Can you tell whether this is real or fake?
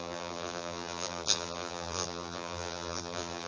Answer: fake